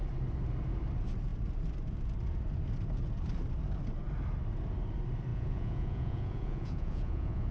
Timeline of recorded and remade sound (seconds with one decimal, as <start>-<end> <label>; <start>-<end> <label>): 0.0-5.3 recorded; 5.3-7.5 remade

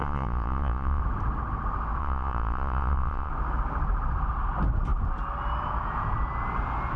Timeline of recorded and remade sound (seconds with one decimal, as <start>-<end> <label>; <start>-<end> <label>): 0.0-1.0 remade; 1.0-2.0 recorded; 2.0-3.3 remade; 3.3-7.0 recorded

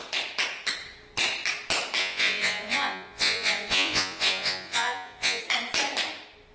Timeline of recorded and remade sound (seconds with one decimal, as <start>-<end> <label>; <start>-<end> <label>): 0.0-2.0 recorded; 2.0-5.4 remade; 5.4-6.5 recorded

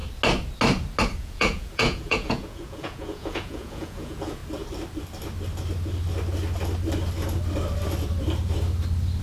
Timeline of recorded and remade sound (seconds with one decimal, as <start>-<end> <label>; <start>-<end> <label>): 0.0-1.2 recorded; 1.2-4.4 remade; 4.4-9.2 recorded

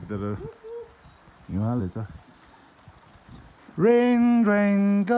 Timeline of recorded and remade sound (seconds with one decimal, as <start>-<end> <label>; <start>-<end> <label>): 0.0-5.2 recorded

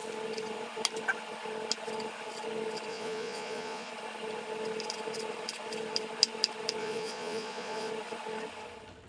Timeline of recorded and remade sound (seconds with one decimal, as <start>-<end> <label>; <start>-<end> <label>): 0.0-2.9 recorded; 2.9-3.9 remade; 3.9-6.8 recorded; 6.8-7.9 remade; 7.9-9.1 recorded